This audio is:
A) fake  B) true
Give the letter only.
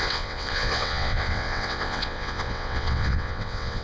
A